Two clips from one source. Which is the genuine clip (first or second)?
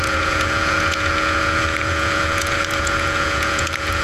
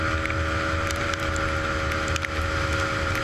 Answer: second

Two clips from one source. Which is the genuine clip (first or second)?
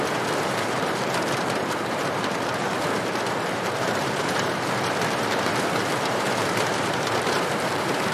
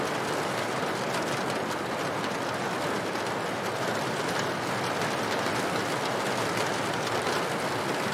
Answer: second